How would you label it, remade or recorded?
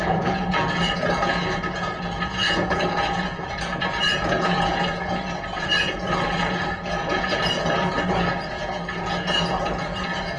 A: remade